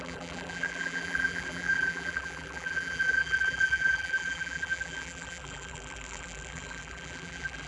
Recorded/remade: remade